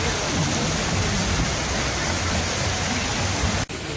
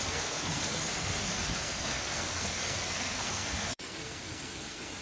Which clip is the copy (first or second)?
second